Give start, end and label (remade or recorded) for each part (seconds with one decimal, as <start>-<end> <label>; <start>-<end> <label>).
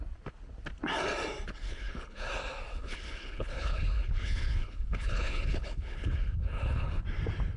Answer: 0.0-1.6 recorded; 1.6-2.3 remade; 2.3-2.7 recorded; 2.7-7.0 remade; 7.0-7.6 recorded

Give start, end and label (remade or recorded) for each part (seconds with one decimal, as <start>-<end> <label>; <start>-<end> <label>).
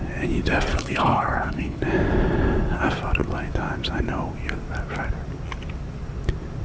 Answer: 0.0-0.7 recorded; 0.7-1.8 remade; 1.8-6.6 recorded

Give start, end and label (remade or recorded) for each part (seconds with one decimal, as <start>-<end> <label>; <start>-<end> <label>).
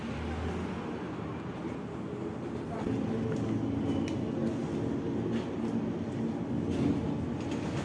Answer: 0.0-7.8 recorded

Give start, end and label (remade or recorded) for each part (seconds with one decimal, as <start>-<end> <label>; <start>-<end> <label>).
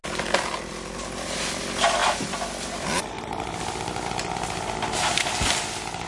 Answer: 0.0-6.1 recorded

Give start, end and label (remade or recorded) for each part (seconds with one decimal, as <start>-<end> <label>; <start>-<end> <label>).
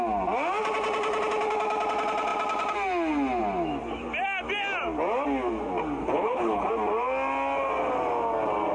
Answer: 0.0-6.0 recorded; 6.0-6.7 remade; 6.7-8.7 recorded